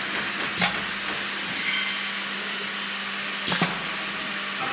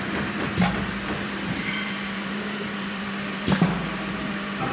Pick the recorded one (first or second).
first